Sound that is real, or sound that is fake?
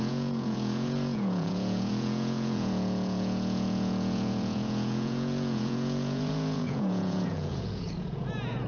fake